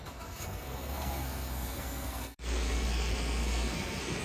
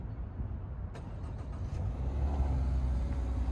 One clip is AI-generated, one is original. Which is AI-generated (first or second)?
first